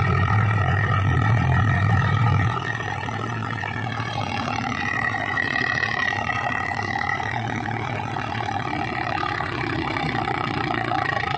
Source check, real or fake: fake